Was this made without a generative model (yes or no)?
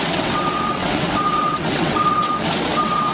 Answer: no